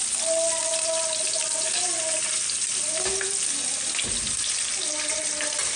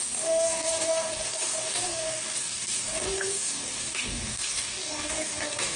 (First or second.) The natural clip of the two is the first